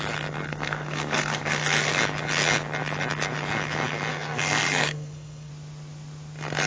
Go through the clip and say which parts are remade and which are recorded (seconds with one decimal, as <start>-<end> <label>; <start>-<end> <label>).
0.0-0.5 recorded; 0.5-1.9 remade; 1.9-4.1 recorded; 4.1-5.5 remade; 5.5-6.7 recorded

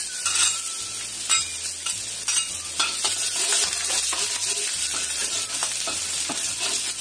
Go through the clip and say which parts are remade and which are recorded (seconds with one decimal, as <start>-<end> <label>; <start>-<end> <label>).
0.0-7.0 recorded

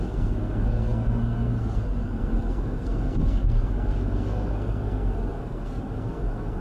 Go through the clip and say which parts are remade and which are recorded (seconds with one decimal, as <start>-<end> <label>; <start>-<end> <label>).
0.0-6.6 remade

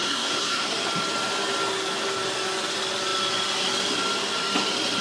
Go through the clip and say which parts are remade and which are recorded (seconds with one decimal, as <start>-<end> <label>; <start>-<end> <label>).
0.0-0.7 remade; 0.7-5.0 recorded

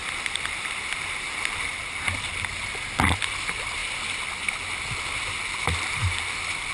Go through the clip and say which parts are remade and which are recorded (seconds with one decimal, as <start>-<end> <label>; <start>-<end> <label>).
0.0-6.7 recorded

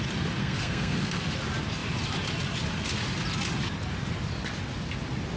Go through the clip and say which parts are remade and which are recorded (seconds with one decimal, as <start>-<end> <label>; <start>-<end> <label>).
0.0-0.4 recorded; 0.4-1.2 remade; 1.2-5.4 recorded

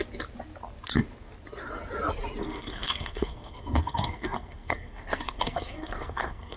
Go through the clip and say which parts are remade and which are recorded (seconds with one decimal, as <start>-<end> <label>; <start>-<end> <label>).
0.0-2.4 recorded; 2.4-6.6 remade